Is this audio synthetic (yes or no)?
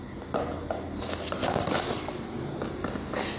no